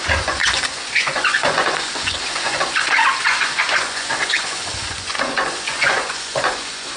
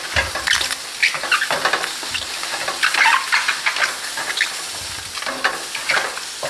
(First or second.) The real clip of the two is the second